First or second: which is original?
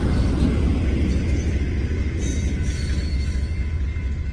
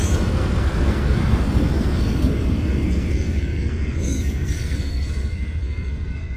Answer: first